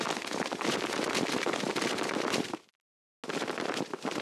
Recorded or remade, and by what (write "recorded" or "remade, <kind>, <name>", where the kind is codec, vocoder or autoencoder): recorded